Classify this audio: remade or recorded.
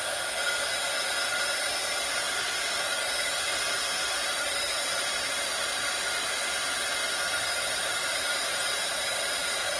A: recorded